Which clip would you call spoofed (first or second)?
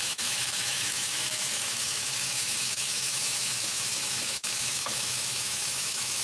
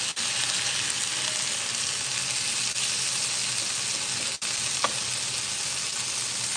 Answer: first